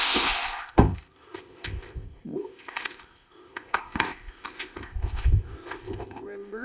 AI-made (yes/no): yes